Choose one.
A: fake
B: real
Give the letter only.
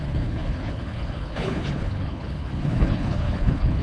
A